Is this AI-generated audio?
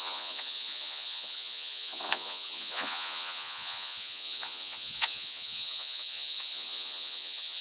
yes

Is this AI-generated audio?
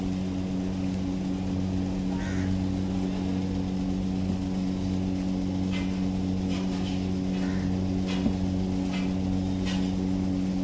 no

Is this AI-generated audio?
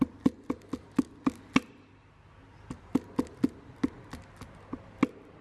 no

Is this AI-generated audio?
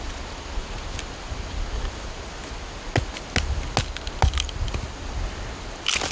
no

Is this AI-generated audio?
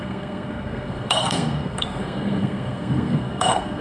yes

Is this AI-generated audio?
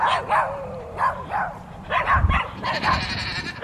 yes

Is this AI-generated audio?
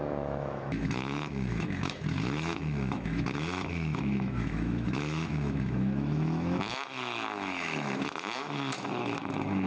yes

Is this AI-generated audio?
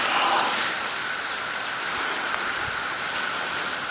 no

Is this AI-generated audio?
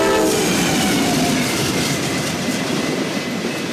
no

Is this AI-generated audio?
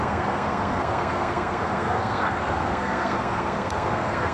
yes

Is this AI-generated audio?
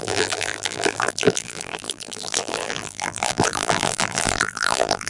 yes